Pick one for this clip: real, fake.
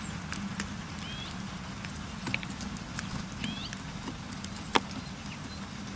real